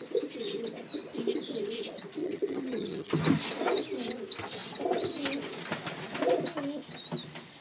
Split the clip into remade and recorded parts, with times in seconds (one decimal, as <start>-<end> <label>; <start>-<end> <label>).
0.0-2.2 recorded; 2.2-3.1 remade; 3.1-7.6 recorded